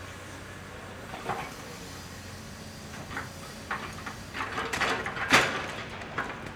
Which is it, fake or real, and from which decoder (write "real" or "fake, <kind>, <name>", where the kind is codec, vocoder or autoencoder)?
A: real